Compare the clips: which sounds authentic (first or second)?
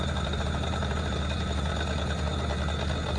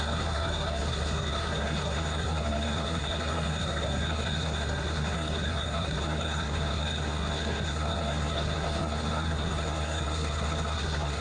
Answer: first